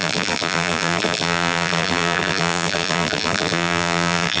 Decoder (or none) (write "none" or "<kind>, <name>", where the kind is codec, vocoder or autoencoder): vocoder, BigVGAN v2